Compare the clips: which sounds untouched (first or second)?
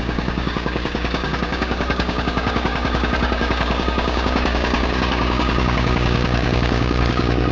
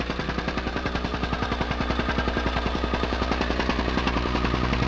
second